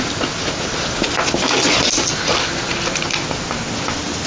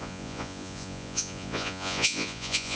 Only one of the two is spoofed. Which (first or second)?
second